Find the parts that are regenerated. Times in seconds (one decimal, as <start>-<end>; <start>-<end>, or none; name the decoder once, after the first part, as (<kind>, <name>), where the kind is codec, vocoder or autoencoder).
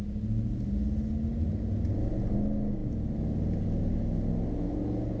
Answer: none